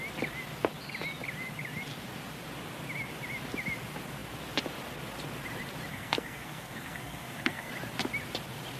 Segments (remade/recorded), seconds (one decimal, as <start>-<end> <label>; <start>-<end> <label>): 0.0-5.9 recorded; 5.9-7.7 remade; 7.7-8.8 recorded

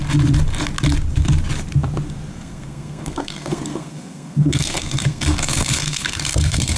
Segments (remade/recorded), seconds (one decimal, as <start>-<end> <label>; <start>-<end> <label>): 0.0-2.3 recorded; 2.3-6.8 remade

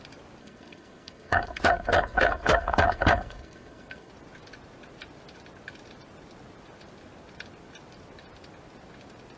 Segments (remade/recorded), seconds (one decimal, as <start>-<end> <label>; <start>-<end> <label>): 0.0-0.4 recorded; 0.4-4.1 remade; 4.1-9.4 recorded

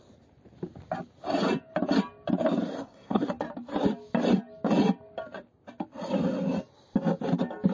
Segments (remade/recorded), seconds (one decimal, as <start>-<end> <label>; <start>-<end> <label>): 0.0-2.7 recorded; 2.7-3.3 remade; 3.3-7.7 recorded